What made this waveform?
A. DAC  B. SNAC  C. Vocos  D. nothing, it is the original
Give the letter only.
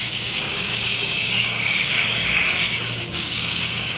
A